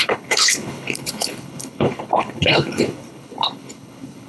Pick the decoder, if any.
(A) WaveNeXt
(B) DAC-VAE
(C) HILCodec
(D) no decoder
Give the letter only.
C